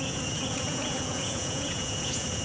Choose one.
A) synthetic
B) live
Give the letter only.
A